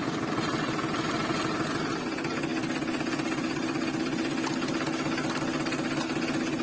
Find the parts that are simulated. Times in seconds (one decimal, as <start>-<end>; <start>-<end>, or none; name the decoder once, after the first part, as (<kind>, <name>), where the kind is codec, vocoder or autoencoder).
none